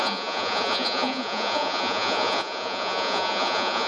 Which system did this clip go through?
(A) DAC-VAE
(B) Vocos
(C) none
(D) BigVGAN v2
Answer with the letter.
B